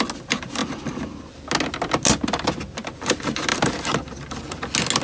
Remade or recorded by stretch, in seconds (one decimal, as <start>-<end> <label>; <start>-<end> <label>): 0.0-5.0 recorded